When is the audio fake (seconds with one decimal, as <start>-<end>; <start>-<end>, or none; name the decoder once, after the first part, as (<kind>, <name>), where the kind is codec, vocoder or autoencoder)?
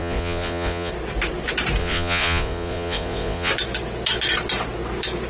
0.0-0.9 (vocoder, Vocos); 1.8-3.5